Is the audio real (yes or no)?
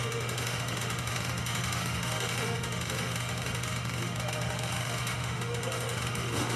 no